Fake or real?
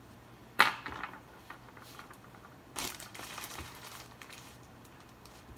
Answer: fake